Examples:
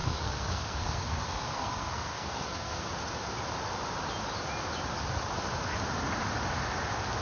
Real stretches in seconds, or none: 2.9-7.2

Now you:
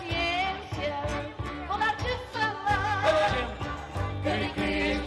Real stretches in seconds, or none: 0.0-2.3; 3.3-5.1